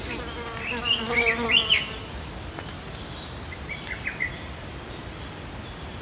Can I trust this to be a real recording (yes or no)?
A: yes